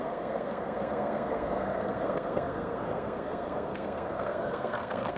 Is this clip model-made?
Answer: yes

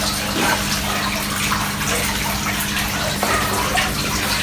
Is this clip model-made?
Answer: no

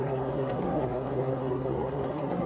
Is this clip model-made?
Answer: yes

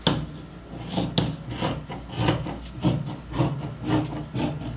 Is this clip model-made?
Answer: no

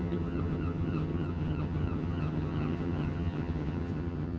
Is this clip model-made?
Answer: yes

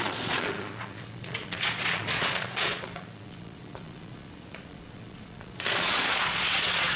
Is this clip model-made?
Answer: yes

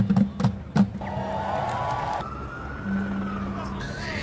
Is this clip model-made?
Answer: no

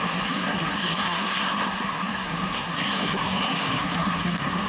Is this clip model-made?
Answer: yes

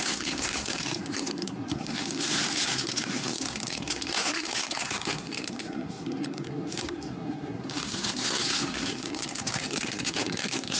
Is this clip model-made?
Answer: yes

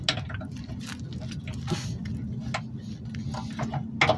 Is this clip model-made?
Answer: no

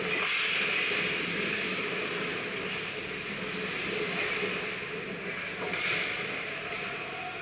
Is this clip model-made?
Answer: no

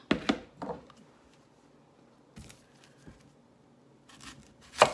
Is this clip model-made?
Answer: no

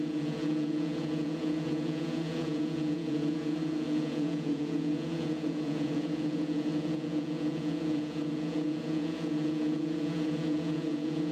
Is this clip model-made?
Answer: yes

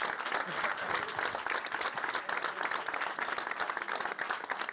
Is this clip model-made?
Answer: no